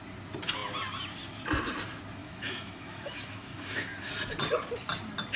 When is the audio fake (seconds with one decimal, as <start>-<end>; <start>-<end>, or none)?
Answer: 2.2-4.1